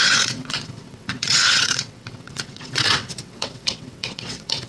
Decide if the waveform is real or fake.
fake